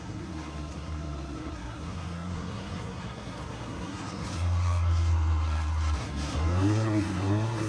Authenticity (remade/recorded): remade